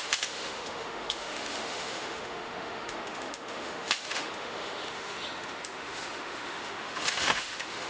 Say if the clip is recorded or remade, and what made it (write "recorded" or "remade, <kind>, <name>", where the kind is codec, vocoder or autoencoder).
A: remade, autoencoder, DAC-VAE